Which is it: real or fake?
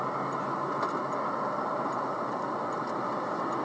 real